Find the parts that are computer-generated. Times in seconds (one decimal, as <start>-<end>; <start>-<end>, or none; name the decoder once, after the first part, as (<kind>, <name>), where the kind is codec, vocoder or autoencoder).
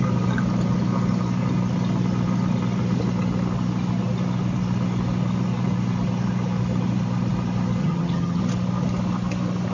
7.8-8.4 (vocoder, HiFi-GAN)